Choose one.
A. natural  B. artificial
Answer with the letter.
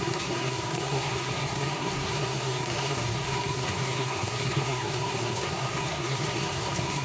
B